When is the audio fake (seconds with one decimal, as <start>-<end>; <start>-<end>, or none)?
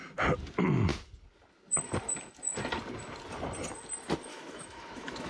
4.3-5.3